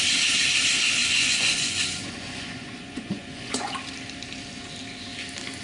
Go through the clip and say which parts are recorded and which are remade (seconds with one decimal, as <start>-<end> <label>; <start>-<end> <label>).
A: 0.0-1.0 recorded; 1.0-3.8 remade; 3.8-5.6 recorded